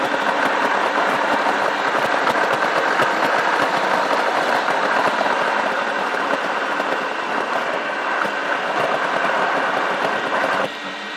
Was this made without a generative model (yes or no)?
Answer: no